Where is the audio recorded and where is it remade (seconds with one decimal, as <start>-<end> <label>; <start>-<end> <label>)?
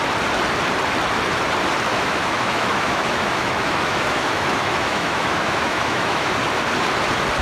0.0-1.9 recorded; 1.9-6.3 remade; 6.3-7.4 recorded